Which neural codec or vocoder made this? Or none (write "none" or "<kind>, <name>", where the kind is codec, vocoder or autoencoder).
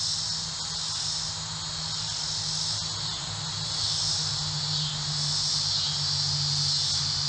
none